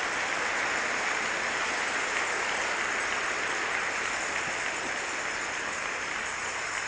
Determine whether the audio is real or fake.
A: real